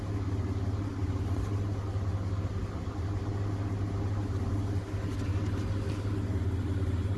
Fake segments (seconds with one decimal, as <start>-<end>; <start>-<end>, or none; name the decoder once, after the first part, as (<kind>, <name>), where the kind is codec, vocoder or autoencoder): none